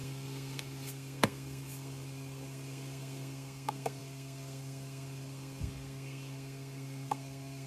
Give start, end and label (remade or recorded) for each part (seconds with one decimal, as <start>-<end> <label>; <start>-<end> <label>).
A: 0.0-7.7 remade